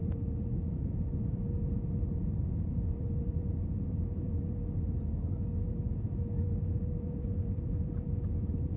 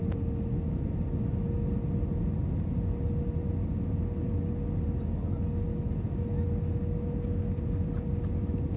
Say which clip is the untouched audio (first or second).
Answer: second